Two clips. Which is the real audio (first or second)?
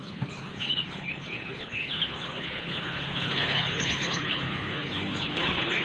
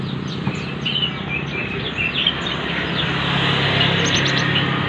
second